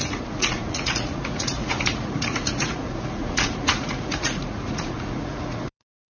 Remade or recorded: remade